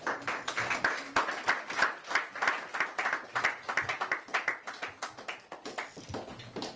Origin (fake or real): real